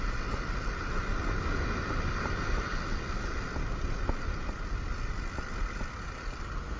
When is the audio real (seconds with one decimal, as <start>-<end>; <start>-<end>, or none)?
0.0-6.8

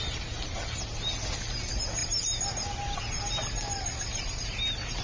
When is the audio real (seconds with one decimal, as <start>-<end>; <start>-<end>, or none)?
0.0-5.0

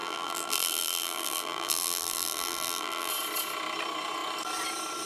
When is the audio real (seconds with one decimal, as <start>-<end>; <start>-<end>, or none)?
3.1-5.1

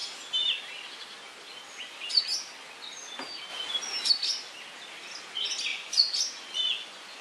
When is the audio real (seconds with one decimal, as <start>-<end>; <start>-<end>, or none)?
0.0-5.7

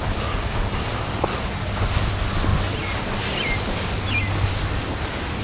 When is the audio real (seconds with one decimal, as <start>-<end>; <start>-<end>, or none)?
0.0-5.4